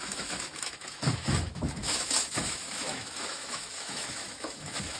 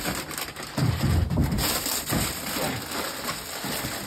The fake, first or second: first